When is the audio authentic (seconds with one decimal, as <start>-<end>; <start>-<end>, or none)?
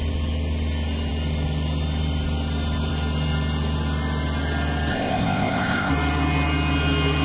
0.0-4.9; 5.9-7.2